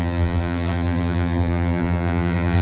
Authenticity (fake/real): fake